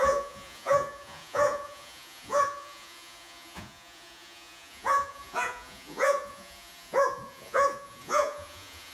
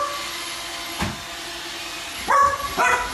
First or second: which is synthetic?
first